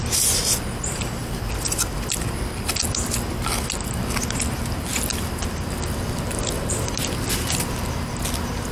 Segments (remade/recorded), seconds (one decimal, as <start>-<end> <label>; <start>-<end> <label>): 0.0-8.7 recorded